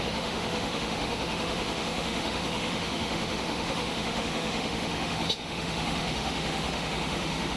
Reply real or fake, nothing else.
fake